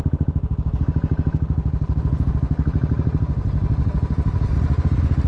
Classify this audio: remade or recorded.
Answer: recorded